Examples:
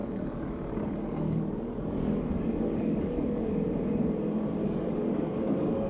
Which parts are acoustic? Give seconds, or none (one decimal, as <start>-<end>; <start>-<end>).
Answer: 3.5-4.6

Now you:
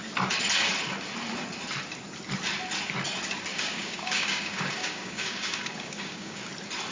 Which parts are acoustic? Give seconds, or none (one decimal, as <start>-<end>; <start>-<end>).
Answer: 0.0-3.5; 6.5-6.9

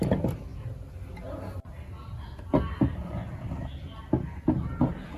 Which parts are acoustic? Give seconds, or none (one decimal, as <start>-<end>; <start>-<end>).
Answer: 0.0-5.2

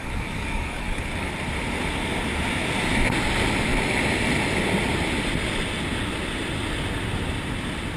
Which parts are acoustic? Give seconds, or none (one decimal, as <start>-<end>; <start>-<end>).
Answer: 1.3-8.0

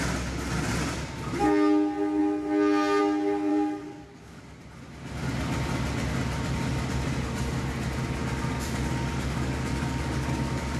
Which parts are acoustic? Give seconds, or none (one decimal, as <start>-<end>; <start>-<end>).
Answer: 0.0-3.5; 4.6-8.5

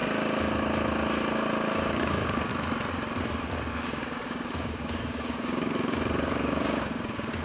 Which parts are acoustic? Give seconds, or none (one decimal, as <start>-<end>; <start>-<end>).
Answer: 0.0-1.7; 2.5-3.7

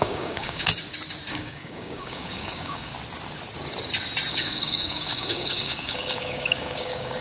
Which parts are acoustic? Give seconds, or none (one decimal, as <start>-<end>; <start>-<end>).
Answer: 0.7-1.3; 2.9-4.3

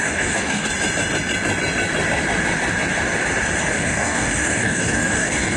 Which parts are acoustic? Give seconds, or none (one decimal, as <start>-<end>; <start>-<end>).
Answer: 0.7-3.6